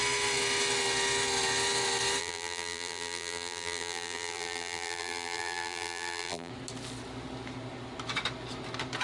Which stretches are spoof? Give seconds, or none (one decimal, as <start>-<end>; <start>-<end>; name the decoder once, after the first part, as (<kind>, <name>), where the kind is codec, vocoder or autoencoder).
2.2-6.5 (vocoder, BigVGAN v2)